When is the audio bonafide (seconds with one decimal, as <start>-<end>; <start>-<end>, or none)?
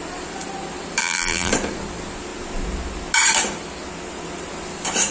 0.0-1.0; 1.5-5.1